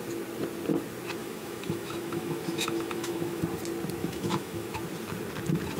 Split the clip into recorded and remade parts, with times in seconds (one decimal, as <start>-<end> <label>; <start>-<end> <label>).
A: 0.0-1.2 recorded; 1.2-3.4 remade; 3.4-4.0 recorded; 4.0-4.8 remade; 4.8-5.8 recorded